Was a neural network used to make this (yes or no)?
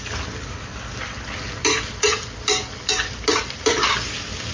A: no